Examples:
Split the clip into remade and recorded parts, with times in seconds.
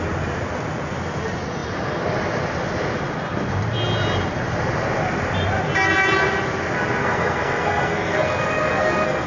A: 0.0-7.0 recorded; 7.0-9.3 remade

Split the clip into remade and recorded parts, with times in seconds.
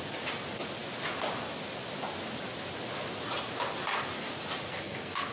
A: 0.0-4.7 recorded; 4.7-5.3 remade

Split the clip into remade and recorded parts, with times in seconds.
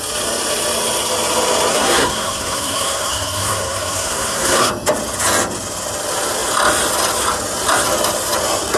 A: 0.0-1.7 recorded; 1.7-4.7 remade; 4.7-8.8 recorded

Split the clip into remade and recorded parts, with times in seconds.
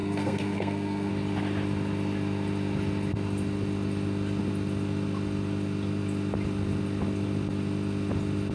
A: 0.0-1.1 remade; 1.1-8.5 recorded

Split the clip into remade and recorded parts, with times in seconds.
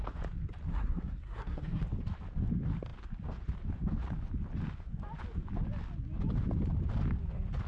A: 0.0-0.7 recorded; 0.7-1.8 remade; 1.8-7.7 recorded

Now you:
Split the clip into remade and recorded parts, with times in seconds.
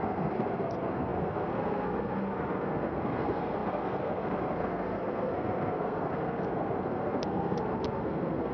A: 0.0-8.5 remade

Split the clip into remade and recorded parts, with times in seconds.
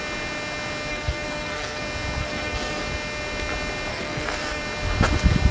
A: 0.0-0.9 recorded; 0.9-1.8 remade; 1.8-2.2 recorded; 2.2-2.8 remade; 2.8-3.9 recorded; 3.9-4.6 remade; 4.6-5.5 recorded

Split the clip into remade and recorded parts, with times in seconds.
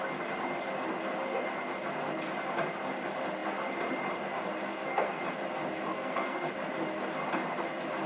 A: 0.0-4.7 recorded; 4.7-5.2 remade; 5.2-5.9 recorded; 5.9-6.5 remade; 6.5-8.1 recorded